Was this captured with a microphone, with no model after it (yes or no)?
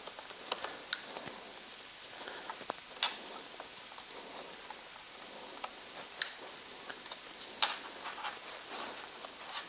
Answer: yes